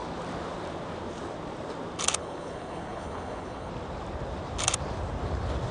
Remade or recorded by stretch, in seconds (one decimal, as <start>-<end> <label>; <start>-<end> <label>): 0.0-2.2 recorded; 2.2-3.7 remade; 3.7-5.7 recorded